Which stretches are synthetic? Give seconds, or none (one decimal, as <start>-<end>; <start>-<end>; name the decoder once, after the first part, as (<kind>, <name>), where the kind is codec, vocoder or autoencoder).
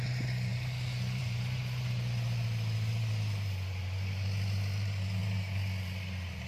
none